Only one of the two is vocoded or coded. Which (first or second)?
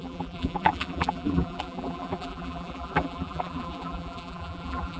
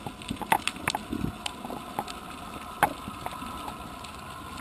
first